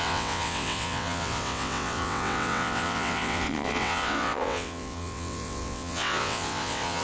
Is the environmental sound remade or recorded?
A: remade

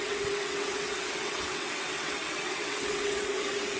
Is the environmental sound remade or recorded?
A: remade